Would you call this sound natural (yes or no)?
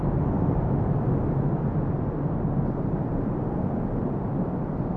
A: yes